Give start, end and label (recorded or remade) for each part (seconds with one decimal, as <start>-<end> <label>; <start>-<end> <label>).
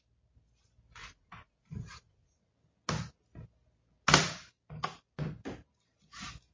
0.0-1.0 recorded; 1.0-2.5 remade; 2.5-6.5 recorded